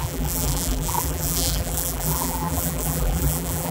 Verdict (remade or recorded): remade